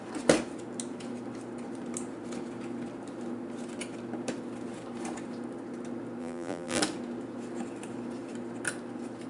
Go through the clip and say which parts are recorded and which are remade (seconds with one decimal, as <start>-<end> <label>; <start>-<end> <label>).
0.0-6.2 recorded; 6.2-6.8 remade; 6.8-9.3 recorded